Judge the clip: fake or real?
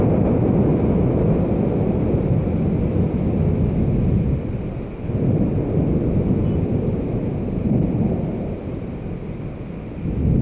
real